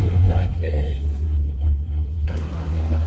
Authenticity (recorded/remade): remade